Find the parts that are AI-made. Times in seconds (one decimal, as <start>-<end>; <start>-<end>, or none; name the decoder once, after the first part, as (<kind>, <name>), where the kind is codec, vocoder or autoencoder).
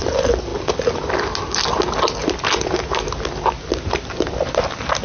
none